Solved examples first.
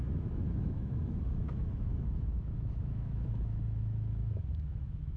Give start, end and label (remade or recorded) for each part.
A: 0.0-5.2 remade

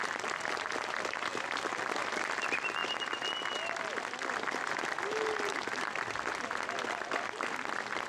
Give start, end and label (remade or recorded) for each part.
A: 0.0-8.1 recorded

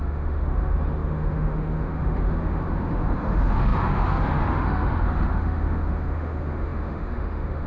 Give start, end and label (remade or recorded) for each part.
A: 0.0-7.7 remade

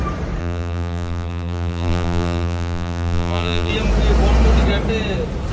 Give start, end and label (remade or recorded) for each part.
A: 0.0-0.4 recorded; 0.4-3.7 remade; 3.7-5.5 recorded

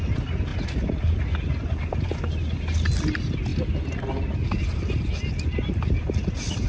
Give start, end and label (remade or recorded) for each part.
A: 0.0-6.7 recorded

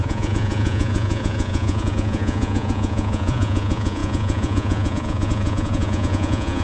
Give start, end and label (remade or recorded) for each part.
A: 0.0-6.6 remade